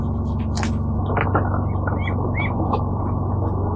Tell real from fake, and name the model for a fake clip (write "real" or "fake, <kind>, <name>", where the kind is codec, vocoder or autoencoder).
real